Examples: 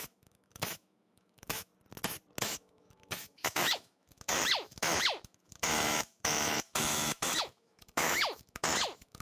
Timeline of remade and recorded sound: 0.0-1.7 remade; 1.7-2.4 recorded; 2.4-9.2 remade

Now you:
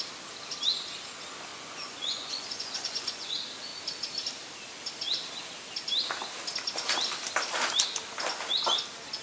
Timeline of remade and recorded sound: 0.0-1.5 recorded; 1.5-3.3 remade; 3.3-9.2 recorded

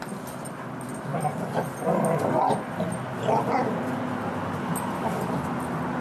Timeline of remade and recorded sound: 0.0-6.0 recorded

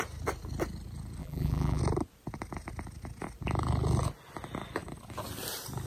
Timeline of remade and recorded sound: 0.0-1.2 recorded; 1.2-1.8 remade; 1.8-5.9 recorded

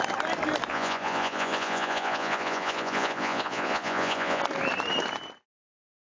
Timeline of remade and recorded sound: 0.0-0.7 recorded; 0.7-4.4 remade; 4.4-6.2 recorded

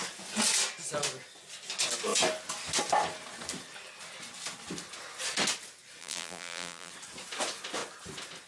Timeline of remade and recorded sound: 0.0-6.0 recorded; 6.0-6.9 remade; 6.9-8.5 recorded

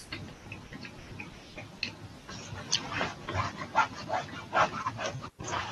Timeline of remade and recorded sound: 0.0-5.7 recorded

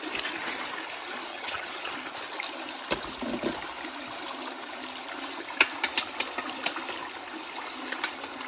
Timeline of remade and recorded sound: 0.0-1.3 recorded; 1.3-1.9 remade; 1.9-8.5 recorded